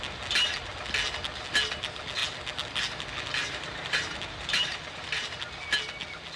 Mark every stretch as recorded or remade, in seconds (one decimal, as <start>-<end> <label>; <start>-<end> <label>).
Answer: 0.0-3.4 recorded; 3.4-5.4 remade; 5.4-6.4 recorded